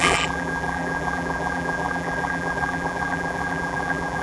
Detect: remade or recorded remade